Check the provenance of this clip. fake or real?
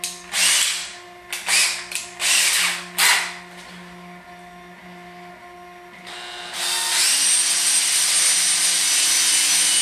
real